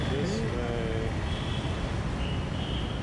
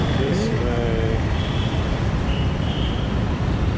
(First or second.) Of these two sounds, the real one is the first